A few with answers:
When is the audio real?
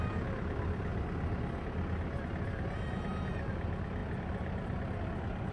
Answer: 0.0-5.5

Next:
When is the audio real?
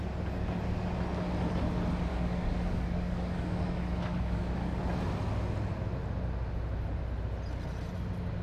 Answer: 0.0-2.1; 4.8-8.4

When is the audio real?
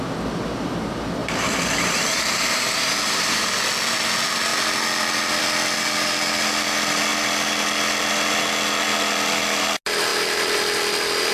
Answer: 0.0-1.2; 3.5-11.3